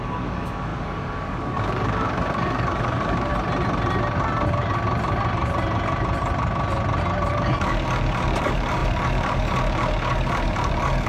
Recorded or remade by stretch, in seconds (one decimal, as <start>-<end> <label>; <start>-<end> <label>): 0.0-3.3 remade; 3.3-7.3 recorded; 7.3-11.1 remade